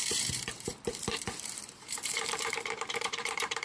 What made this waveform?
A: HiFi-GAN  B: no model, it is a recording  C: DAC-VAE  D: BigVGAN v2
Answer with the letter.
D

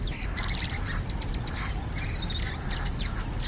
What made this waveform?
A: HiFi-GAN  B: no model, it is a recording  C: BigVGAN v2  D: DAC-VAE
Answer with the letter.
B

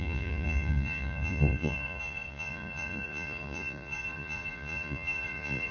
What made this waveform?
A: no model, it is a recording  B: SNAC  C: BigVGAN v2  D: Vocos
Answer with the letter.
D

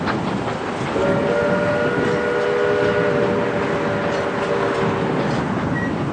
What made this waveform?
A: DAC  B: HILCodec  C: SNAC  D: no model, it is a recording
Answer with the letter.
D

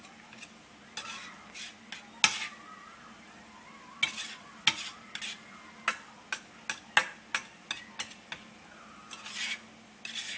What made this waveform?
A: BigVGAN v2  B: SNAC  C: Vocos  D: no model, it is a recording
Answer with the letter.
D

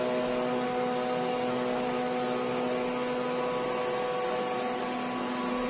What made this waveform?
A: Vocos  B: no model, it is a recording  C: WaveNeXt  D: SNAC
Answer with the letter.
B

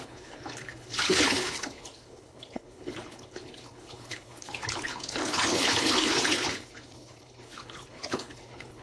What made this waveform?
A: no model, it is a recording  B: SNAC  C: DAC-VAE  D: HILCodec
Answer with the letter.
D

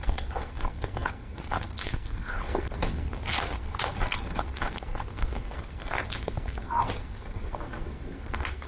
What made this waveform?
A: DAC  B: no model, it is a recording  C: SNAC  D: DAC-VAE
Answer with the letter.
C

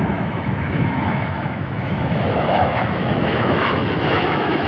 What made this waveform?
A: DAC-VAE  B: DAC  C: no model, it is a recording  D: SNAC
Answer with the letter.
A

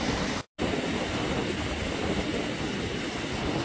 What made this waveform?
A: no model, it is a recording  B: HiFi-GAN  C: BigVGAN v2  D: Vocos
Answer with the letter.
A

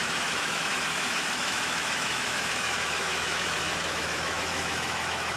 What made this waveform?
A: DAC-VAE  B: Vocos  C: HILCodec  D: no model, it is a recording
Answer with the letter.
A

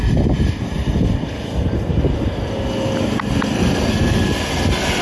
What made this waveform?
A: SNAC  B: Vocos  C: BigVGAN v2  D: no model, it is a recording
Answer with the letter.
D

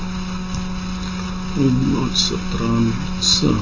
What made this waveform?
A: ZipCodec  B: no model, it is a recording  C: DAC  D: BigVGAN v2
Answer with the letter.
B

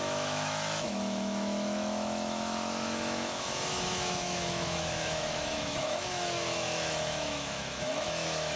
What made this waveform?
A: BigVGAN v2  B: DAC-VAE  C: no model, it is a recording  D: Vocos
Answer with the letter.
B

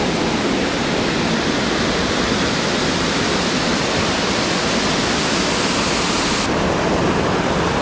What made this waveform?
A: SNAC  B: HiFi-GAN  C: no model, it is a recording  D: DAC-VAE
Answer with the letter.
C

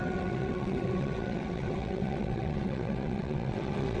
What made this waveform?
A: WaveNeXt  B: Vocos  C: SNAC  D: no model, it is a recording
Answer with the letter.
A